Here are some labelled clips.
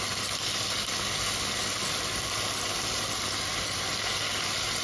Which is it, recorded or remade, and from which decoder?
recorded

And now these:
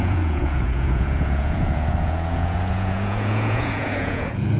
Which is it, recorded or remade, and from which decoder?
remade, vocoder, Vocos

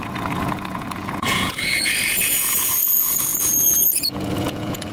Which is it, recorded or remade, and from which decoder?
remade, vocoder, Vocos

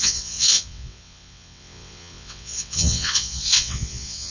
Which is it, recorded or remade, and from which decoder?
remade, vocoder, WaveNeXt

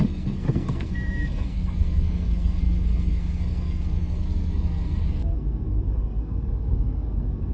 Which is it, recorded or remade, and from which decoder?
remade, codec, SNAC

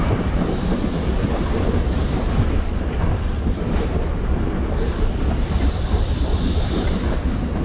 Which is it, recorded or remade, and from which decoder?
remade, vocoder, BigVGAN v2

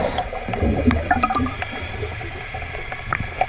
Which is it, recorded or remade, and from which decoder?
remade, vocoder, BigVGAN v2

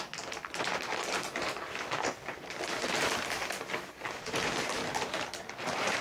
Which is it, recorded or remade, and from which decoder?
remade, vocoder, BigVGAN v2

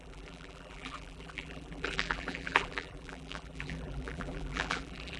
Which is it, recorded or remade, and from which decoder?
remade, vocoder, BigVGAN v2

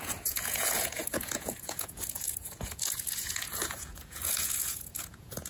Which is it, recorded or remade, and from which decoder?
remade, vocoder, Vocos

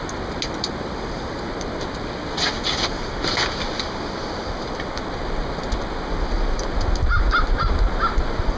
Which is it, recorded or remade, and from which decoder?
recorded